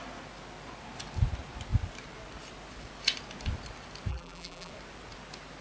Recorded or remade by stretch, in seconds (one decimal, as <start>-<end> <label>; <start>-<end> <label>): 0.0-4.1 recorded; 4.1-4.7 remade; 4.7-5.6 recorded

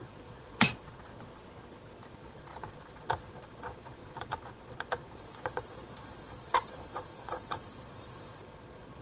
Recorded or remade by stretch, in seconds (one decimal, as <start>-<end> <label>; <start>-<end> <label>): 0.0-1.1 remade; 1.1-2.1 recorded; 2.1-9.0 remade

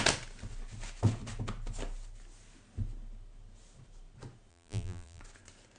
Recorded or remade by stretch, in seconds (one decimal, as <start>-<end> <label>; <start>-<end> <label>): 0.0-4.5 recorded; 4.5-5.2 remade; 5.2-5.8 recorded

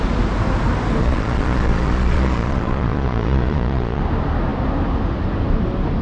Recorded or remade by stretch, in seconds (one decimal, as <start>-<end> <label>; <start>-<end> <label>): 0.0-1.0 recorded; 1.0-4.0 remade; 4.0-6.0 recorded